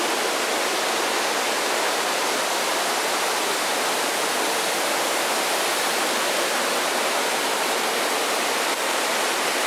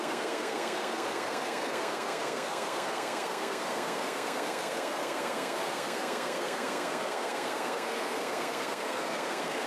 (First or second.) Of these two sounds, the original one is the first